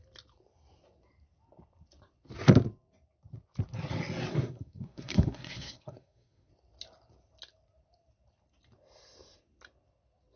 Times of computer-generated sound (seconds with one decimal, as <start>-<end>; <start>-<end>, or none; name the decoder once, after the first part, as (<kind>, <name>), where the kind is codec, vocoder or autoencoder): 4.3-6.5 (codec, SNAC)